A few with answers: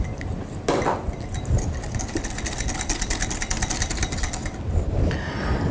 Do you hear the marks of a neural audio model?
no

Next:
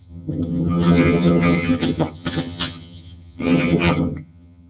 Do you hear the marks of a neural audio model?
yes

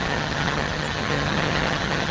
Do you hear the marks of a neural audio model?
yes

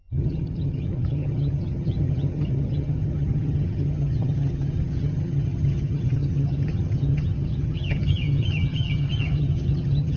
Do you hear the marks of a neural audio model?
yes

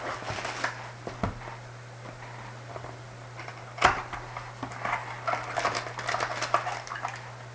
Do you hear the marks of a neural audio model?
no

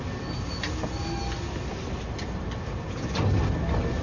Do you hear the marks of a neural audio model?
no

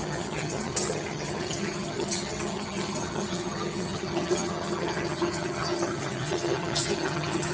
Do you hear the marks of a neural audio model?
yes